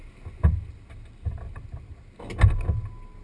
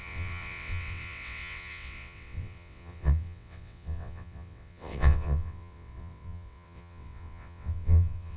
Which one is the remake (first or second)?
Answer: second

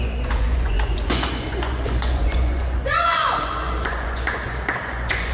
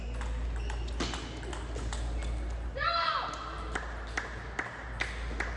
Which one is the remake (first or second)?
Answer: first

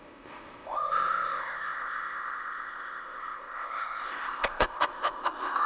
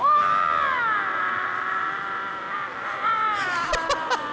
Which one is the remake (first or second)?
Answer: first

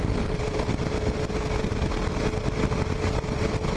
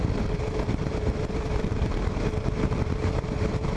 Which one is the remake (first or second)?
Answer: second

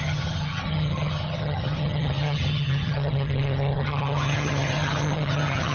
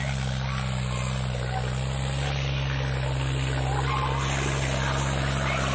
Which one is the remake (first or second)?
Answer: first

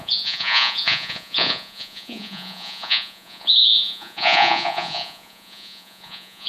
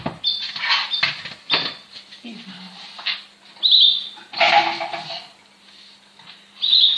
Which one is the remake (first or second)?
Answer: first